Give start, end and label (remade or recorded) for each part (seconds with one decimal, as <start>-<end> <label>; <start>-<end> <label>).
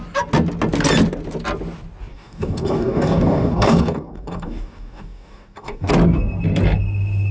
0.0-2.1 recorded; 2.1-5.9 remade; 5.9-7.3 recorded